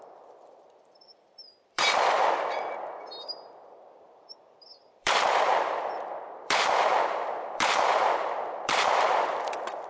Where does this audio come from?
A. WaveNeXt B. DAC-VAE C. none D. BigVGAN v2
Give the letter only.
D